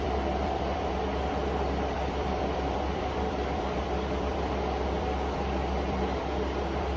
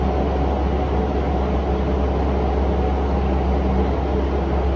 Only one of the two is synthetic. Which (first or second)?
first